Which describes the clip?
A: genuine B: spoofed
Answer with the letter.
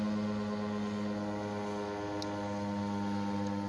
A